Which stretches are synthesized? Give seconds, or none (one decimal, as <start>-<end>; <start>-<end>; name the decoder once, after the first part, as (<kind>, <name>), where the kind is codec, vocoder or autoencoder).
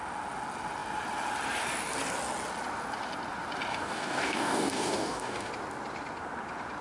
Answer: 3.7-5.5 (codec, DAC)